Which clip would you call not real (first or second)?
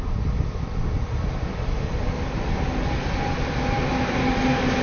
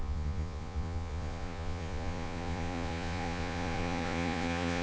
second